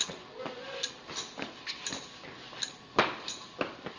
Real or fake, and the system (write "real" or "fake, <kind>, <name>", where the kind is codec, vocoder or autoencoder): real